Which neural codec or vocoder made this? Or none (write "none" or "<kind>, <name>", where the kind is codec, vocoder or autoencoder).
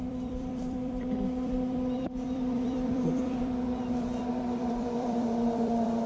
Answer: vocoder, BigVGAN v2